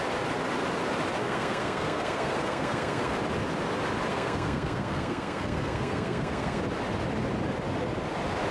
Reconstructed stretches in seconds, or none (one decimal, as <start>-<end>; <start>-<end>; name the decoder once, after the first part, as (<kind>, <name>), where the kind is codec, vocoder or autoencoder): 1.2-3.2 (codec, SNAC); 4.1-6.6